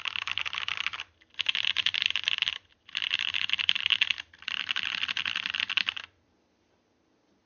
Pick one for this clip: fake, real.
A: real